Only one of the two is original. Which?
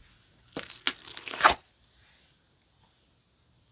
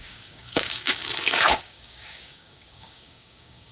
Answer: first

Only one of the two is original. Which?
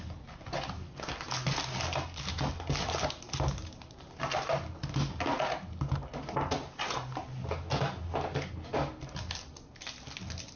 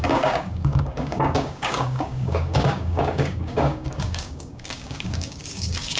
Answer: first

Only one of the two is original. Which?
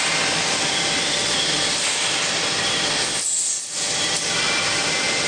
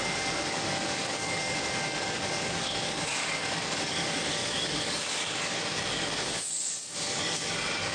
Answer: first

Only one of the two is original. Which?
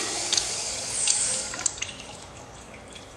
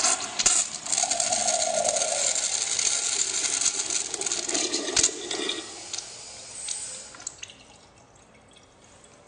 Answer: second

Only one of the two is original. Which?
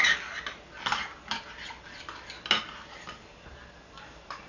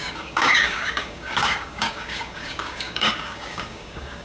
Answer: first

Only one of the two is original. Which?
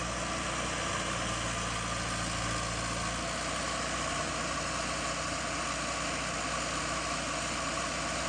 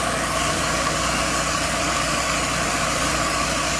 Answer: first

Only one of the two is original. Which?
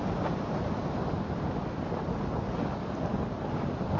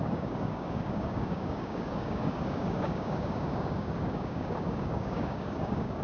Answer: first